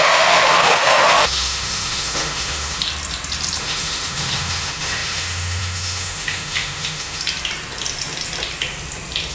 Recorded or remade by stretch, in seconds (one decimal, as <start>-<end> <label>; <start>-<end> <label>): 0.0-2.8 remade; 2.8-3.6 recorded; 3.6-7.2 remade; 7.2-9.3 recorded